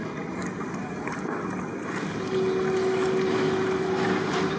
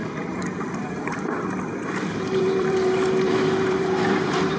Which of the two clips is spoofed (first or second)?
second